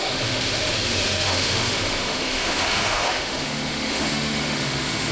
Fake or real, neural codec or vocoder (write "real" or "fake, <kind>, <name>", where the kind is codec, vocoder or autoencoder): fake, autoencoder, DAC-VAE